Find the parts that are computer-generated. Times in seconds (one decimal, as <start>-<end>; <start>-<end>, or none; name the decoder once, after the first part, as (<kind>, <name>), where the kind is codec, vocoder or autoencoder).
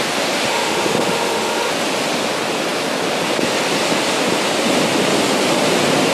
0.5-1.7 (autoencoder, DAC-VAE)